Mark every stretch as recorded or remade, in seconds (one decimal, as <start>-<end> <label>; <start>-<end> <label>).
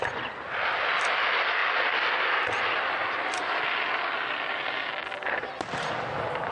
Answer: 0.0-6.5 recorded